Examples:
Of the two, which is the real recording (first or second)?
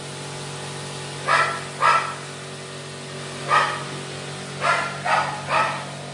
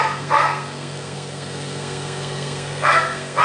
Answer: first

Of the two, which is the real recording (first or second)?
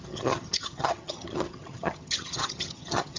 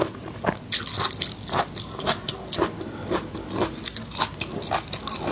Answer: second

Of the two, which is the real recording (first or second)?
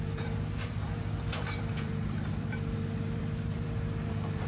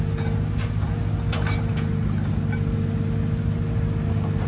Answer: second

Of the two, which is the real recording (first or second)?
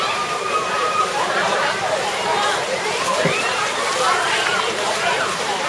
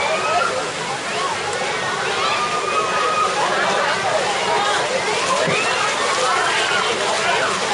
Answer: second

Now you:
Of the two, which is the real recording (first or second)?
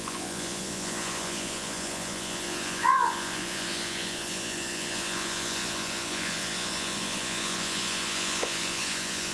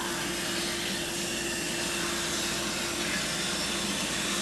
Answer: second